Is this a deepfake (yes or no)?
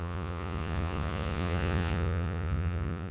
yes